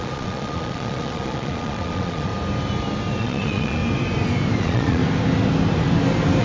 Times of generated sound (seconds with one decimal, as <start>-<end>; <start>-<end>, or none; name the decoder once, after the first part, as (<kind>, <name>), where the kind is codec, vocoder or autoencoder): 0.0-2.3 (vocoder, Vocos); 3.2-3.8; 4.6-5.0